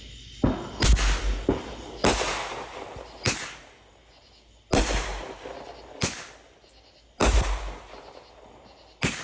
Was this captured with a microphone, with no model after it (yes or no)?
yes